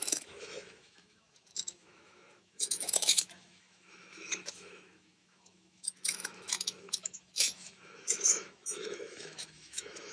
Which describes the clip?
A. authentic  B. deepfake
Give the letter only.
B